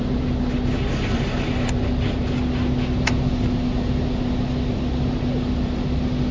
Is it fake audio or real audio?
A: real